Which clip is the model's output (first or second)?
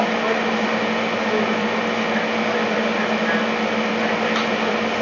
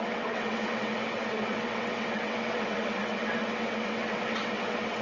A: second